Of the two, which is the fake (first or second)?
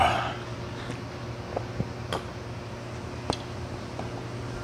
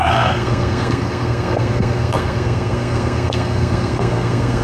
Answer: second